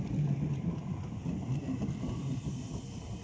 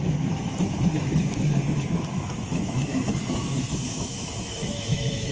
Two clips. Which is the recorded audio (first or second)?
first